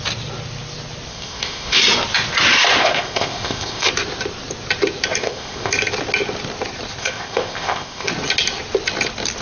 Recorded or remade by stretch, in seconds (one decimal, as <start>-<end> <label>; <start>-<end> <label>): 0.0-1.1 recorded; 1.1-1.8 remade; 1.8-2.8 recorded; 2.8-3.9 remade; 3.9-5.2 recorded; 5.2-5.7 remade; 5.7-7.0 recorded; 7.0-8.1 remade; 8.1-9.4 recorded